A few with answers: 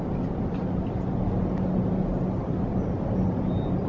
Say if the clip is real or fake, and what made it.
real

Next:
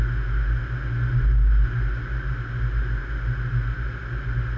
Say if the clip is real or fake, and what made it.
real